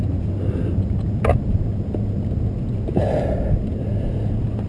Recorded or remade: recorded